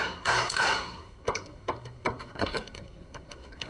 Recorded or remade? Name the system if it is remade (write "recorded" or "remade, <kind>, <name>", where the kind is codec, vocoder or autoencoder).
remade, codec, SNAC